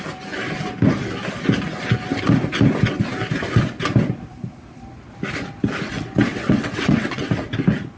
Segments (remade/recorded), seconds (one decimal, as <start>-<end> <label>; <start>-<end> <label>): 0.0-6.3 recorded; 6.3-7.3 remade; 7.3-8.0 recorded